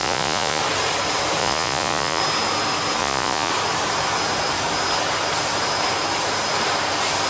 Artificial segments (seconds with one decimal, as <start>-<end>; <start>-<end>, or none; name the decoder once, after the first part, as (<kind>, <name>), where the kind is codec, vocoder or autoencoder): 0.0-0.6 (vocoder, Vocos); 1.4-2.2; 3.0-3.5